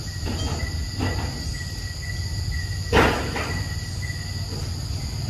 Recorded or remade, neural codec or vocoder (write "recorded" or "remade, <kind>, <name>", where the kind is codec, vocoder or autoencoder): recorded